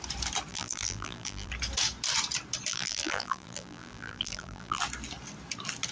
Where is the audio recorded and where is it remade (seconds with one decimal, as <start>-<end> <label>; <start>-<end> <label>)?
0.0-0.5 recorded; 0.5-1.5 remade; 1.5-2.7 recorded; 2.7-4.8 remade; 4.8-5.9 recorded